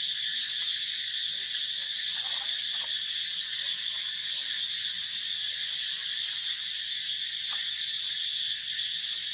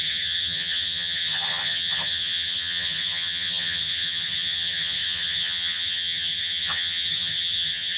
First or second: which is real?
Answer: first